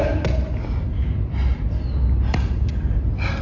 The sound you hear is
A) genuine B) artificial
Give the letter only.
A